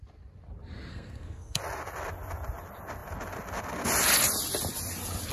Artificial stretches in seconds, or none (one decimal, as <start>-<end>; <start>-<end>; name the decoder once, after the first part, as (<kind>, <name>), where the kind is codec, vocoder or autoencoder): 0.9-1.6 (codec, SNAC)